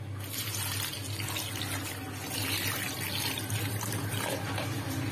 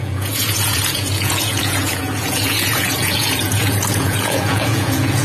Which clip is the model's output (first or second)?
second